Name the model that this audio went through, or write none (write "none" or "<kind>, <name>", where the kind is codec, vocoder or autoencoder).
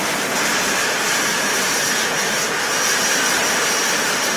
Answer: none